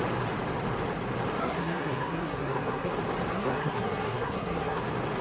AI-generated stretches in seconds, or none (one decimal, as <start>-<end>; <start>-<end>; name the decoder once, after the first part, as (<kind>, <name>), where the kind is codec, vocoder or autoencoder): 1.4-2.9 (codec, SNAC); 3.3-4.8